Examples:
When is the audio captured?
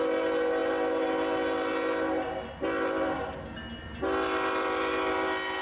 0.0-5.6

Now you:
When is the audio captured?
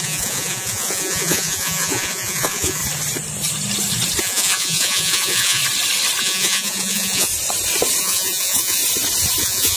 2.8-4.2; 5.6-6.2; 7.3-8.0; 8.8-9.4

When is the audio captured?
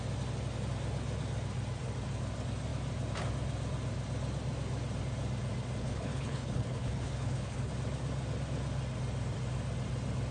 0.0-5.8; 7.7-10.3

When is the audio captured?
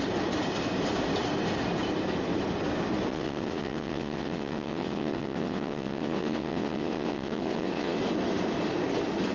0.0-3.1; 8.0-9.3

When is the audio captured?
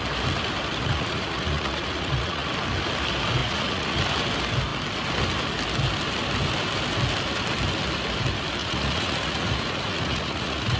0.0-0.8; 2.5-3.4; 4.0-8.6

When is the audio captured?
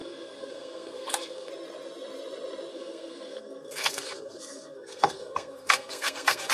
1.5-2.7